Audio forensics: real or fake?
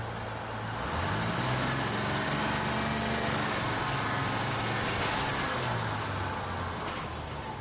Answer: real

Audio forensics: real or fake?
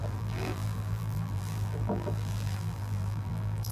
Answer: fake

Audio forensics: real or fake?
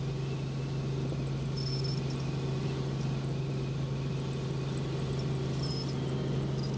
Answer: real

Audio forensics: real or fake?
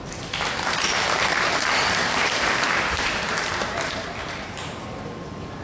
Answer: fake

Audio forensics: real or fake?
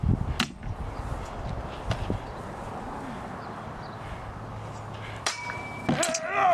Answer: real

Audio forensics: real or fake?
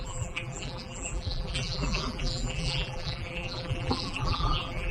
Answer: fake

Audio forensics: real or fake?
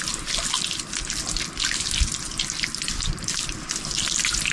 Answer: real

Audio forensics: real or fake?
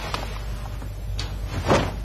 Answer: real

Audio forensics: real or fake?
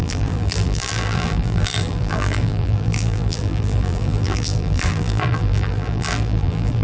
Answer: fake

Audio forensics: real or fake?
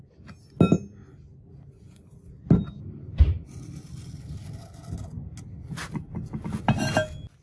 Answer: real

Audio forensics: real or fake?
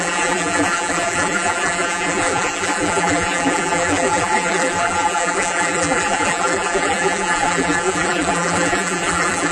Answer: fake